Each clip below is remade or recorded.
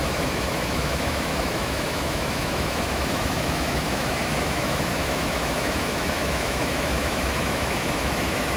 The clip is remade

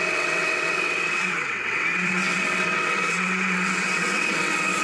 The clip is remade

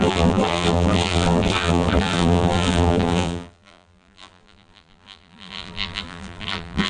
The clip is remade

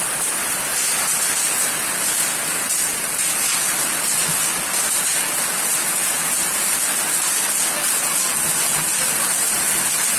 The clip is recorded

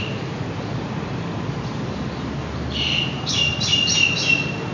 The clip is recorded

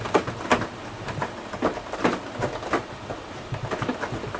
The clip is recorded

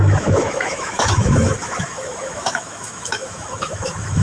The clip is remade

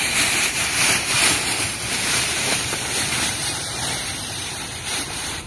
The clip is remade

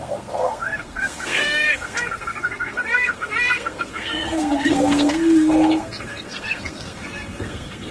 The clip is remade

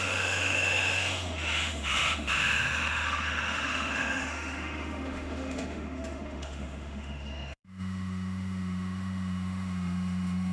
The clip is remade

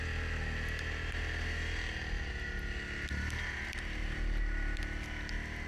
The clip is recorded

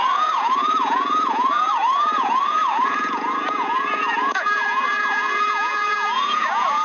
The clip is remade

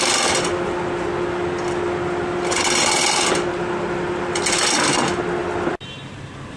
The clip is recorded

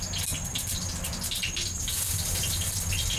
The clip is recorded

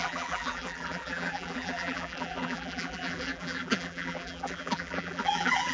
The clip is remade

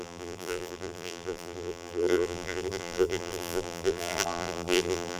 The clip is remade